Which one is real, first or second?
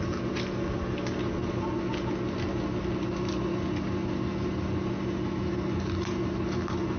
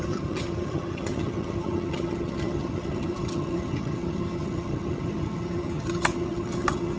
first